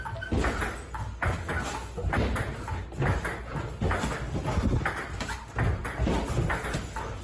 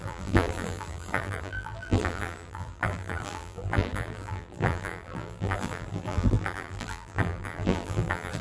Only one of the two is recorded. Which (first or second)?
first